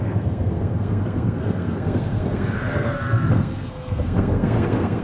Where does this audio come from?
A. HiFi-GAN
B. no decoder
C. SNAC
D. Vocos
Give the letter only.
C